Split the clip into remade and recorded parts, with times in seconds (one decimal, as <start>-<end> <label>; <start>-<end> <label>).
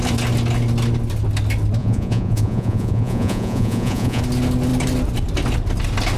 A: 0.0-1.8 recorded; 1.8-4.2 remade; 4.2-6.2 recorded